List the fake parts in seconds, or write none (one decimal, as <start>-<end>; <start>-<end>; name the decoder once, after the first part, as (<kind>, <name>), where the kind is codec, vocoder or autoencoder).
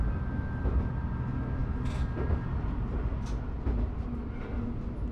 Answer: none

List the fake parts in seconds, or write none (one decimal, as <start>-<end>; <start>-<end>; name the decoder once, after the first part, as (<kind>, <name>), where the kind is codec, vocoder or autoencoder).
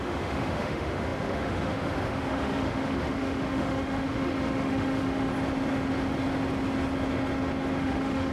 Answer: 0.0-5.3 (autoencoder, DAC-VAE); 7.8-8.3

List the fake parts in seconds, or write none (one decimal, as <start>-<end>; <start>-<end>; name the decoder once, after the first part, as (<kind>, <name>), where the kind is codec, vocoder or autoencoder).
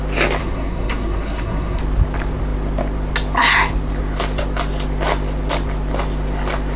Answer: 0.4-1.8 (codec, SNAC)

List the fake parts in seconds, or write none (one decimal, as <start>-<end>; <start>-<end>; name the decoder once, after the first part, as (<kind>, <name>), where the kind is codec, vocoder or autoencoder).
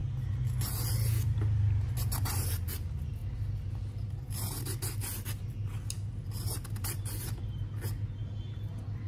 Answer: none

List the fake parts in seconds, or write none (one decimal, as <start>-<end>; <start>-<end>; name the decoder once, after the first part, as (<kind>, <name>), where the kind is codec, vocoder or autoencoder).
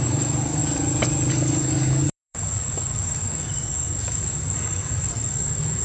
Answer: 0.0-0.6 (codec, DAC); 1.3-5.8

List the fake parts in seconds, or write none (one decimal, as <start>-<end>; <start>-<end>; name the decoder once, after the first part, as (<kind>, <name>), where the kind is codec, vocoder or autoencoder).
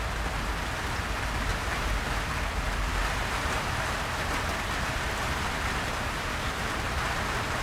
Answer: 1.5-2.0 (vocoder, BigVGAN v2); 2.9-3.8